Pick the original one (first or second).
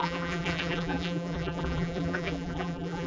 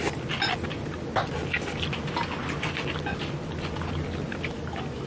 second